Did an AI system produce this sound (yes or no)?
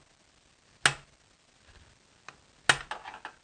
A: no